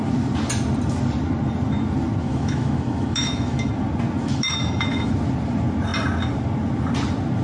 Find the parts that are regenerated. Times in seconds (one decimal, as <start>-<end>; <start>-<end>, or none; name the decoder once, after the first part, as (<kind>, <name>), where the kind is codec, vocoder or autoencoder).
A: 2.2-3.7 (autoencoder, DAC-VAE); 4.2-5.1

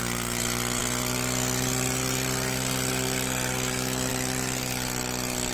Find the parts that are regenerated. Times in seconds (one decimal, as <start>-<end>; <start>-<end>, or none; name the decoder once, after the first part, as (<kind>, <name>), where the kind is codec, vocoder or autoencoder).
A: none